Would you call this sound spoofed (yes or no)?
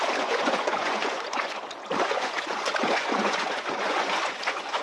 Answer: yes